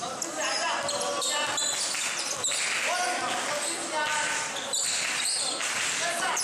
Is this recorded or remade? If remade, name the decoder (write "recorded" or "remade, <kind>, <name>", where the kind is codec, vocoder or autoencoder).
recorded